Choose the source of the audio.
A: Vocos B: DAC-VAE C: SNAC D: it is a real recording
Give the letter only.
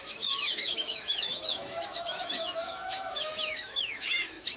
B